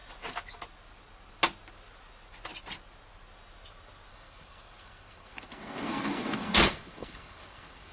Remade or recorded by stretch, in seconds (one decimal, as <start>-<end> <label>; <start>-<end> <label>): 0.0-4.1 recorded; 4.1-7.9 remade